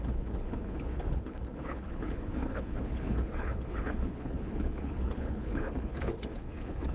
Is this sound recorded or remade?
remade